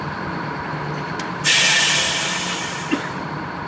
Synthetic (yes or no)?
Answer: no